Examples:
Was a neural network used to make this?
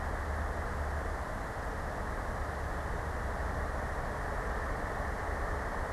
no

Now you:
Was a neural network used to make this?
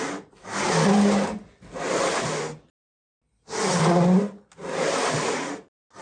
no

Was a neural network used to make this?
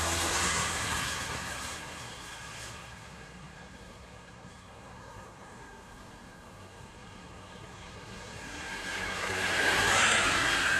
yes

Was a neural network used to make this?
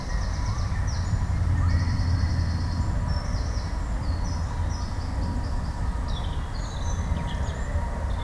no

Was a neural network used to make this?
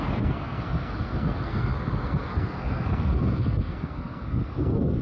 yes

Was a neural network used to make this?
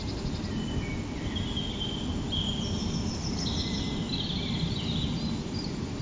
no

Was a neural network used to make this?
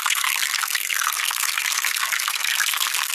yes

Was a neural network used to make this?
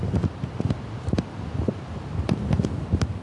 no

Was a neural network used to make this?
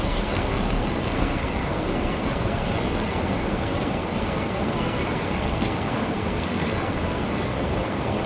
yes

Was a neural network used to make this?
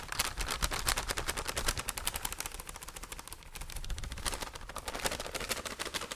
no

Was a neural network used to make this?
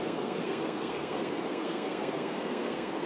yes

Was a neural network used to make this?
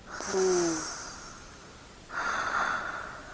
no